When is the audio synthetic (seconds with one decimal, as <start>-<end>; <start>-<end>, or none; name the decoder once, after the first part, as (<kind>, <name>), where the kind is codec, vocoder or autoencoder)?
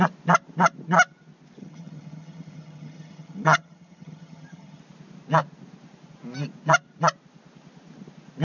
1.6-4.8 (vocoder, HiFi-GAN)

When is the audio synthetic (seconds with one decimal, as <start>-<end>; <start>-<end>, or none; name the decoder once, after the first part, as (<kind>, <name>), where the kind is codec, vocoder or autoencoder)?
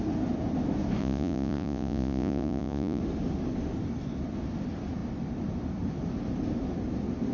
1.0-3.0 (vocoder, Vocos)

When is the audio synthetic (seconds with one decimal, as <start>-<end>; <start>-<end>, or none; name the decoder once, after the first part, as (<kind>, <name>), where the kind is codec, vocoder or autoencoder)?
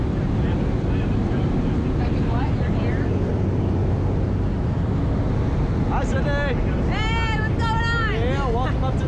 none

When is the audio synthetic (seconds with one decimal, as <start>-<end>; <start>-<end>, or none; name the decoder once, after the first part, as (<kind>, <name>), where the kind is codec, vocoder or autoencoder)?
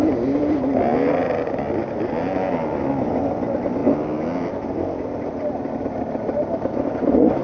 none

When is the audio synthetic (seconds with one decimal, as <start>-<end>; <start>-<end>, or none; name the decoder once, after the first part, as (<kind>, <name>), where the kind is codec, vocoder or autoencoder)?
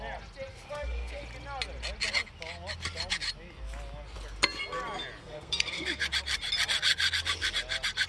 0.5-1.2 (codec, SNAC); 5.2-6.0